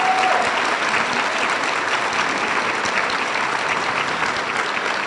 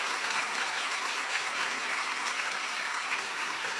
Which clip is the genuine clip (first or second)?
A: first